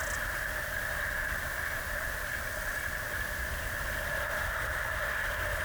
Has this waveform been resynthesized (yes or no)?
no